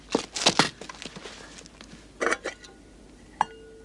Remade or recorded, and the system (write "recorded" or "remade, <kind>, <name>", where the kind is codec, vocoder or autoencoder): recorded